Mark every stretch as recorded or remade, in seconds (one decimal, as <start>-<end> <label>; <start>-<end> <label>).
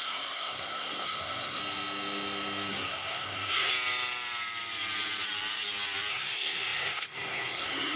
0.0-1.6 remade; 1.6-2.7 recorded; 2.7-3.7 remade; 3.7-6.1 recorded; 6.1-8.0 remade